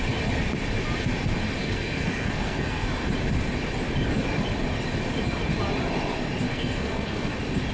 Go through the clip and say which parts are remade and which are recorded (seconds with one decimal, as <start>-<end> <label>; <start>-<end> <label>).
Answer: 0.0-1.6 recorded; 1.6-2.9 remade; 2.9-6.5 recorded; 6.5-7.3 remade; 7.3-7.7 recorded